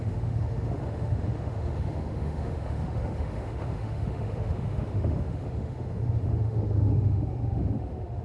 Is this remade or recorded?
remade